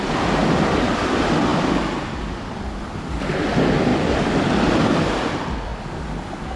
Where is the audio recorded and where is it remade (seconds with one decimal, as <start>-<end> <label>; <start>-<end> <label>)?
0.0-0.4 recorded; 0.4-1.0 remade; 1.0-3.9 recorded; 3.9-4.5 remade; 4.5-6.6 recorded